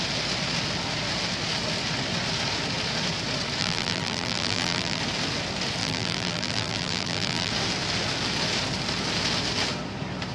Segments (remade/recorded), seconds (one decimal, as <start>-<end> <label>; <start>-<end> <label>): 0.0-3.6 recorded; 3.6-5.0 remade; 5.0-5.8 recorded; 5.8-7.5 remade; 7.5-10.3 recorded